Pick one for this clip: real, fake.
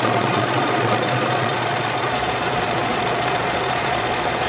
fake